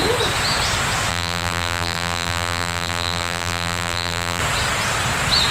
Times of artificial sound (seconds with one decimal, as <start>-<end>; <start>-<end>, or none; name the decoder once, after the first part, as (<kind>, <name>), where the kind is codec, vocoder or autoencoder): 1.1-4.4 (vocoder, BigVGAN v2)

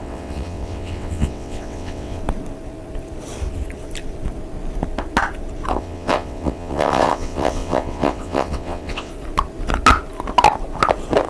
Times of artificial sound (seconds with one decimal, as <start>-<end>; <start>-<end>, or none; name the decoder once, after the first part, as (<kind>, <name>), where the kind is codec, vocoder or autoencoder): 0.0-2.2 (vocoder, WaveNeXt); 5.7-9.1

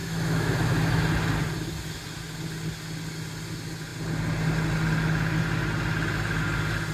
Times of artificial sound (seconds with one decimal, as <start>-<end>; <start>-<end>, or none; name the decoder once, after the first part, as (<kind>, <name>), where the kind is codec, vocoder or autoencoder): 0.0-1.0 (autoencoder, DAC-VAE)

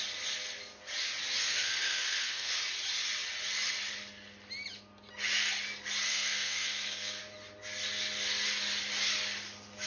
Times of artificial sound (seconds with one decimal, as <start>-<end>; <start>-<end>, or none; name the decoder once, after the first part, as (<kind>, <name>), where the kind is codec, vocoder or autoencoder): 1.4-2.5 (codec, SNAC); 6.1-7.2

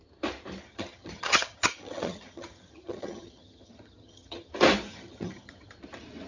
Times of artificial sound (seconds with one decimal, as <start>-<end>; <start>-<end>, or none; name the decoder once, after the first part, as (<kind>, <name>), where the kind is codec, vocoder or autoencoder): 0.7-4.5 (vocoder, HiFi-GAN); 4.9-5.7